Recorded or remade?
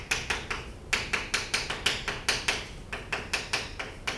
recorded